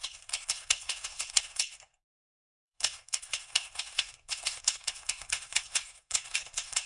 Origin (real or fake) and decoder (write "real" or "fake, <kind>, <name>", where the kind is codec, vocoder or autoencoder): fake, codec, SNAC